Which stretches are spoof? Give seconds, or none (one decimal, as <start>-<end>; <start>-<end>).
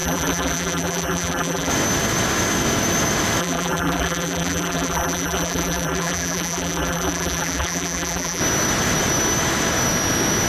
0.0-1.7; 3.4-8.4